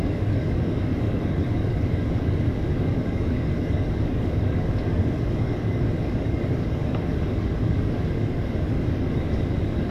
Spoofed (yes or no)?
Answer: yes